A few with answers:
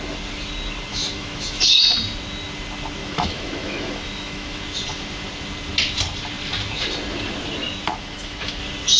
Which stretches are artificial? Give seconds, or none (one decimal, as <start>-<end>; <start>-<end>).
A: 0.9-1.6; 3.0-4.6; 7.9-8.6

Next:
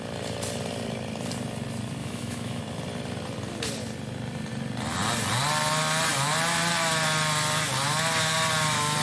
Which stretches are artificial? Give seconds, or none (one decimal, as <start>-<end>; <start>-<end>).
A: 2.0-2.6

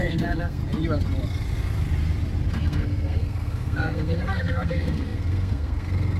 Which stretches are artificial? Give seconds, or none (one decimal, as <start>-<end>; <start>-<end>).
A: 0.0-0.6; 2.5-6.2